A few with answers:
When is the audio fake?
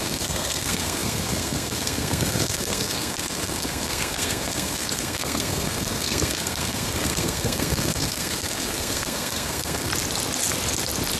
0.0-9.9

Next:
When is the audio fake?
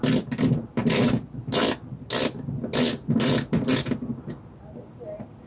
none